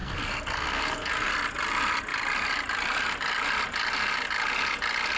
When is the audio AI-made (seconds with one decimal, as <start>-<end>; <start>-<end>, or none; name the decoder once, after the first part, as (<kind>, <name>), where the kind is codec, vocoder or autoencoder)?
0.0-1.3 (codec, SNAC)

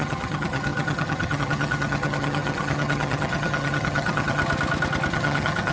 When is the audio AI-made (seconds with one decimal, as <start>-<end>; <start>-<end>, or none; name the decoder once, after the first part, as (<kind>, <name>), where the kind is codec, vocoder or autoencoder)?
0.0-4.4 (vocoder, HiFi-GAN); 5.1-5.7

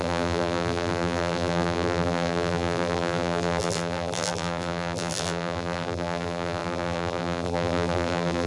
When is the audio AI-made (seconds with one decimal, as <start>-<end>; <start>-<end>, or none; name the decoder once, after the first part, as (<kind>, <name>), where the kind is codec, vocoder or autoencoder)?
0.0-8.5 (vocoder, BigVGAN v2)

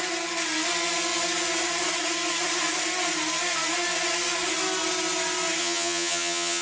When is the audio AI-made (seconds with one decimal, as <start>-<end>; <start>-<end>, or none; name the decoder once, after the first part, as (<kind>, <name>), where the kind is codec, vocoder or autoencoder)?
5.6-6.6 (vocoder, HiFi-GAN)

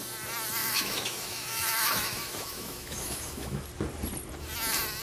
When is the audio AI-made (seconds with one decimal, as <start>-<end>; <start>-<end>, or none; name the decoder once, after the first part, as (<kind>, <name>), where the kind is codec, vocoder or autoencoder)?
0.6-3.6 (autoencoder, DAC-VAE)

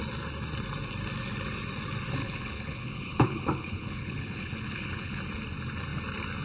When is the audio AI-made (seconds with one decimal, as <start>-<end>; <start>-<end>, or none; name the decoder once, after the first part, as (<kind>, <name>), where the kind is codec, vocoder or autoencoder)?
2.2-5.2 (codec, HILCodec)

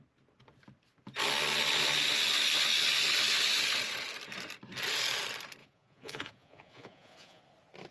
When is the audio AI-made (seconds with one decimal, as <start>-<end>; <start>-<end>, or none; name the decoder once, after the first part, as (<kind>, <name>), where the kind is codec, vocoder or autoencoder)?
5.6-7.4 (vocoder, Vocos)

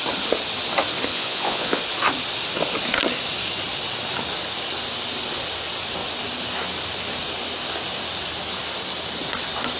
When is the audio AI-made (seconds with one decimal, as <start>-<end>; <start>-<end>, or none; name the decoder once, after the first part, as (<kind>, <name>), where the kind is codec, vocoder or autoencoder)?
1.1-1.8 (vocoder, Vocos)